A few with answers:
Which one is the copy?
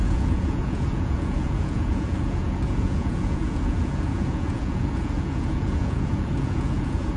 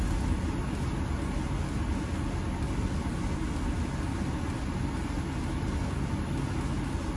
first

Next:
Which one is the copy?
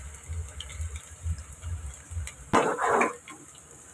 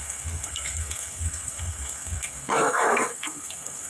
second